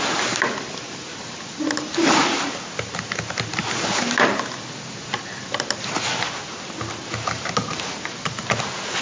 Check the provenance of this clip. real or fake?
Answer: real